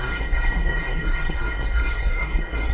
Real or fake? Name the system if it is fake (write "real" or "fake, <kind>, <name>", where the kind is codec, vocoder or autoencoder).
fake, codec, SNAC